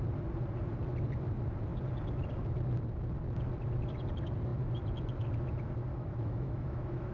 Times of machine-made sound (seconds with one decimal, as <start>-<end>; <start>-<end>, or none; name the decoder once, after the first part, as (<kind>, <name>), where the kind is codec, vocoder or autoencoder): 5.9-7.1 (autoencoder, DAC-VAE)